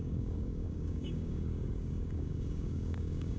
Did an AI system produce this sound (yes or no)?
yes